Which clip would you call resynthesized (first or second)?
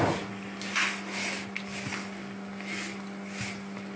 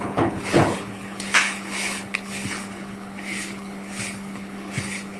second